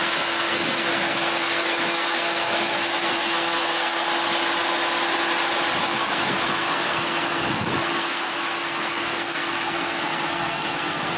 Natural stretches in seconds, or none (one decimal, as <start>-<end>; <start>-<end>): 4.1-5.8